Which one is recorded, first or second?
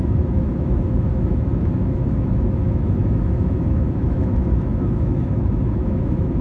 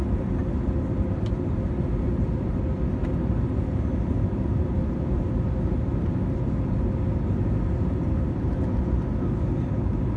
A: second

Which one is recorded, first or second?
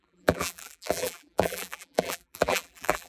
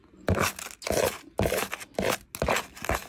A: second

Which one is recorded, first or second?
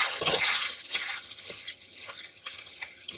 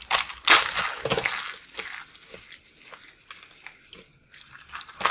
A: second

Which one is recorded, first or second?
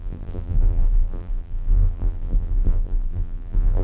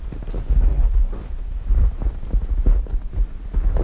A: second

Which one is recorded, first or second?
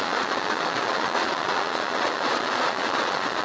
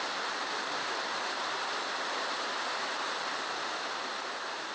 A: second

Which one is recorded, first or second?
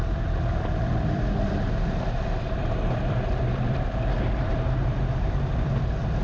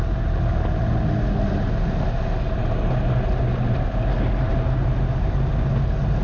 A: second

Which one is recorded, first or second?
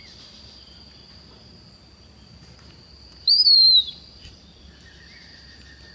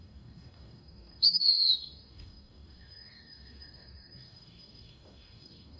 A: first